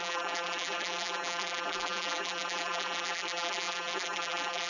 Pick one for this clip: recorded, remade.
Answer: remade